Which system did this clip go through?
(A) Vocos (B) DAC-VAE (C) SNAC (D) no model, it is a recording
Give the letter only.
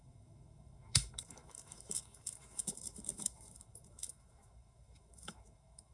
B